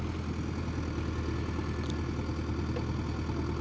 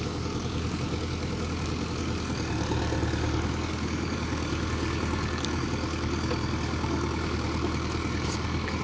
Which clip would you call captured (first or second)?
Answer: first